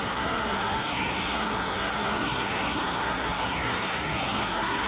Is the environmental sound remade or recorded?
remade